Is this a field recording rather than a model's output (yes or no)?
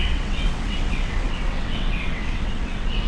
no